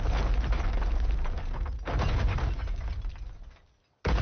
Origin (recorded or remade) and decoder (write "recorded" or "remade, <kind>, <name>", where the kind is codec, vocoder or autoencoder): recorded